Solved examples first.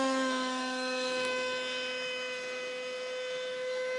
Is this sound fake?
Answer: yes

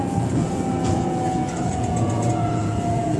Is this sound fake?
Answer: yes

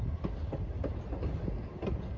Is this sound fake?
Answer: no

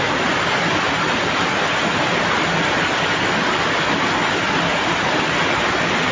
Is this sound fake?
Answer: no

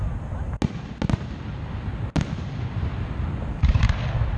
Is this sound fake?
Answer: no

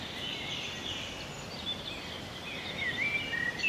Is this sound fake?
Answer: no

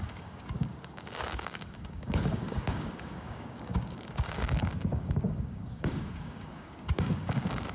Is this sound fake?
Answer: yes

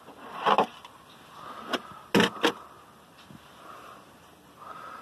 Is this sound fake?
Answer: no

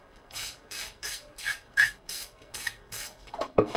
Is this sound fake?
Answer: yes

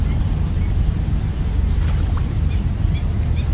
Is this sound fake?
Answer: no